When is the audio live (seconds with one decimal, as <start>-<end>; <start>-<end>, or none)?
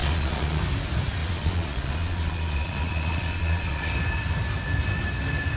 0.6-1.2; 3.9-5.6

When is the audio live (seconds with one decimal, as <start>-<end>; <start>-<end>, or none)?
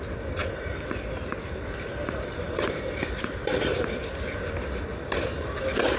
0.0-0.4; 4.0-6.0